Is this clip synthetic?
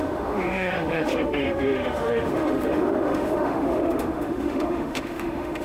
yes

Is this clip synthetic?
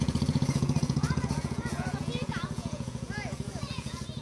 yes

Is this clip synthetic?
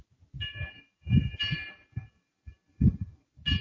no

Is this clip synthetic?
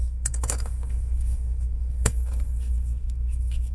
yes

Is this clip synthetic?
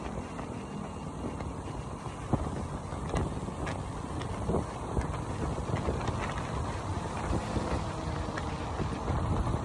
no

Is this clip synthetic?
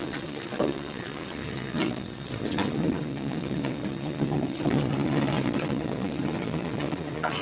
yes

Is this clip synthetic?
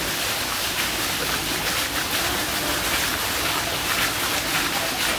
no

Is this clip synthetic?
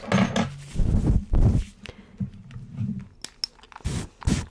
no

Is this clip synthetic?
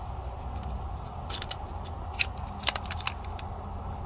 no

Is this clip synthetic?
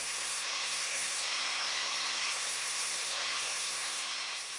yes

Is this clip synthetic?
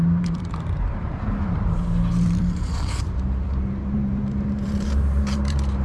yes